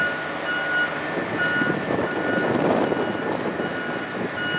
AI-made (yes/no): no